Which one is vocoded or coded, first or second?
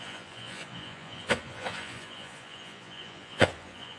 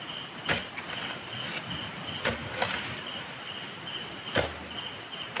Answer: first